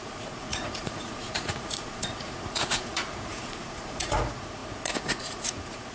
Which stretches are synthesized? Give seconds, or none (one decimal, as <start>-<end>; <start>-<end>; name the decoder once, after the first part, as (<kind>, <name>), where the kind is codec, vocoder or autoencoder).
0.0-5.9 (vocoder, Vocos)

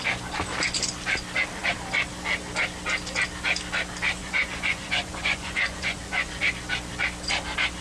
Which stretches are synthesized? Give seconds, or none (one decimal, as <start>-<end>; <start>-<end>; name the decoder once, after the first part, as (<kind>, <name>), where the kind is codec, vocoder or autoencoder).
4.2-6.4 (vocoder, Vocos)

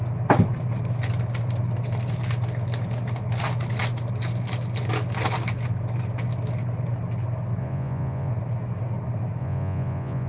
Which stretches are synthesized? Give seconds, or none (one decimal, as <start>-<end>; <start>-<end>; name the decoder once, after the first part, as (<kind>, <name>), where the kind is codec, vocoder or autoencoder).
7.6-8.3 (vocoder, Vocos); 9.4-10.3

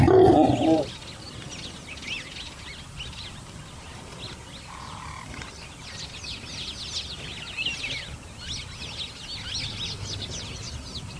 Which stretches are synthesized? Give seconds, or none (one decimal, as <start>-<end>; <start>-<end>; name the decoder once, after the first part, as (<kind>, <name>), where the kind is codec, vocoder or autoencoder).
none

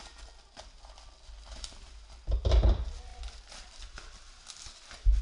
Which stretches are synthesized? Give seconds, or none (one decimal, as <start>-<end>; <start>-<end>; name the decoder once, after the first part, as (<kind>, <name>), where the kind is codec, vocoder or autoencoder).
none

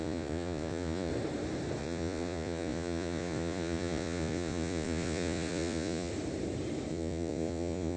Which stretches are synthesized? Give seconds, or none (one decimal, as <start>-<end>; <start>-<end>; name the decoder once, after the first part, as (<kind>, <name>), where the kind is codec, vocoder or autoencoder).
0.0-1.1 (vocoder, Vocos); 1.8-6.1; 6.9-8.0

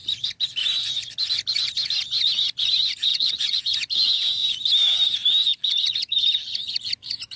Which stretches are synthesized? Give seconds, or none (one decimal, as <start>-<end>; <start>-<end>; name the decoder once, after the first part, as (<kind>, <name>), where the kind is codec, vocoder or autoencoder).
3.1-3.6 (vocoder, Vocos)

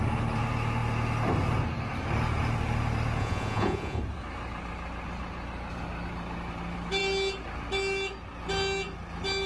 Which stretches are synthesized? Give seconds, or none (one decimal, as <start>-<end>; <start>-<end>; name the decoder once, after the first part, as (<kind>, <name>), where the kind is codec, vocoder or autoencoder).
3.2-4.0 (vocoder, Vocos)